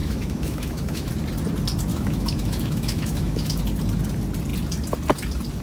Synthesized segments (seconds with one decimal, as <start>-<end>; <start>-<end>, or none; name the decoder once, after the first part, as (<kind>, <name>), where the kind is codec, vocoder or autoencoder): 0.0-1.1 (autoencoder, DAC-VAE); 1.9-3.6